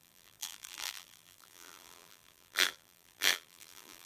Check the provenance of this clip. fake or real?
fake